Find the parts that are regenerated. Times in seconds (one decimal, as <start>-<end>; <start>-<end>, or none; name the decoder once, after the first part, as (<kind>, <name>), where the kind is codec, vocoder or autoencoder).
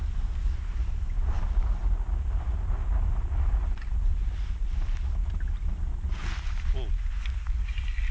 none